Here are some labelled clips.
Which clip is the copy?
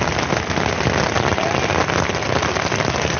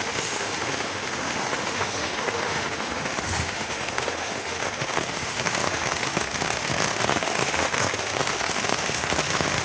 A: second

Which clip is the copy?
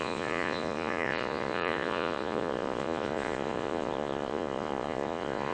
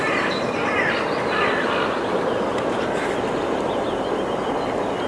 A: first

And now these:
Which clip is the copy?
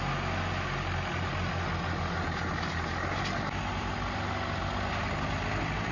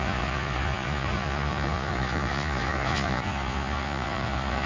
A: second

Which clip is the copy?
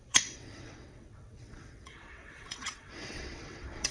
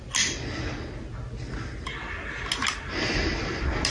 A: first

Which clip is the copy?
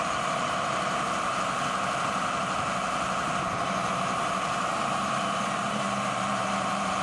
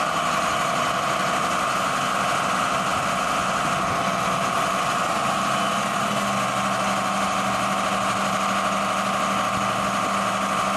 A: first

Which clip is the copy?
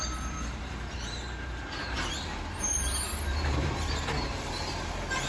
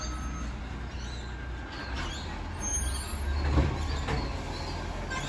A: first